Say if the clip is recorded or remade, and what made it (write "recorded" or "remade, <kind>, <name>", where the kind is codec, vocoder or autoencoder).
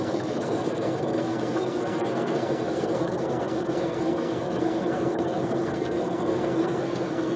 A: remade, codec, SNAC